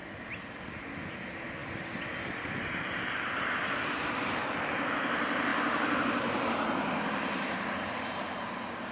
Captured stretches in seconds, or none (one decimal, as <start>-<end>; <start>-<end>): 0.0-8.9